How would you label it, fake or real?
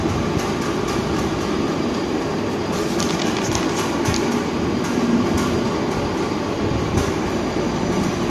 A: real